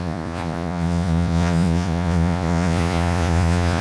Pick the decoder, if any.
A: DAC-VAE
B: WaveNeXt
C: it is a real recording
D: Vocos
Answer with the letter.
D